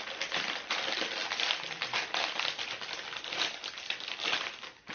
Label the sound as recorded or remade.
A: recorded